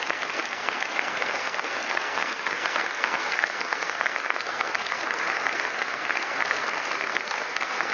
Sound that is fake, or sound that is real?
fake